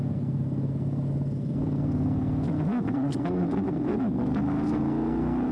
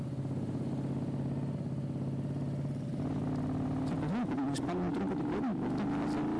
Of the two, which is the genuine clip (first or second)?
second